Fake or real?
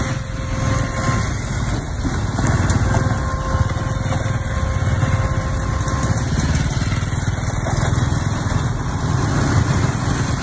real